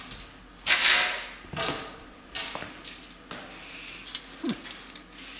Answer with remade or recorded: recorded